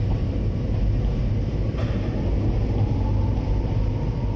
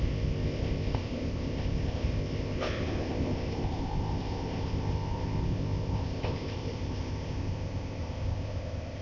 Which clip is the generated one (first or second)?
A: second